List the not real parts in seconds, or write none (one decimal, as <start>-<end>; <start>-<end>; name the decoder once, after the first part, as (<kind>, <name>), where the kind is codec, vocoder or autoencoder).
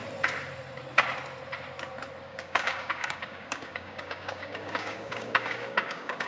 2.3-6.3 (codec, DAC)